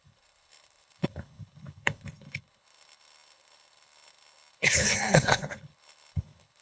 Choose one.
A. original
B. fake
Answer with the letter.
B